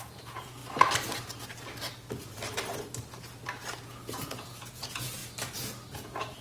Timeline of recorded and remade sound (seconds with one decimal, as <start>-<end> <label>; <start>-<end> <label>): 0.0-0.6 remade; 0.6-4.0 recorded; 4.0-5.2 remade; 5.2-5.9 recorded; 5.9-6.4 remade